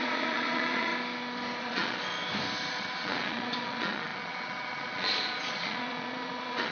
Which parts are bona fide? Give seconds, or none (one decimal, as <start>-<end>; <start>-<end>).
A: 0.9-1.6; 2.1-2.7